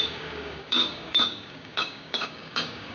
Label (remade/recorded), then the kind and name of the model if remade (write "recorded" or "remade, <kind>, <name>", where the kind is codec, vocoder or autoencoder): remade, codec, DAC